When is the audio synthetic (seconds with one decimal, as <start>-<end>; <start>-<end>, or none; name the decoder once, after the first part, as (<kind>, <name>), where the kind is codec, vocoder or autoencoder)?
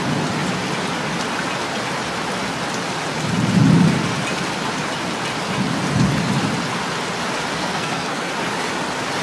7.5-8.3 (codec, SNAC)